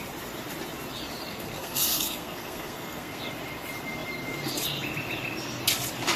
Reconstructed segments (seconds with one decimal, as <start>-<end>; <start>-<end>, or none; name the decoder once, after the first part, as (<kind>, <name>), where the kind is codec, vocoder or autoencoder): 1.3-3.2 (codec, SNAC)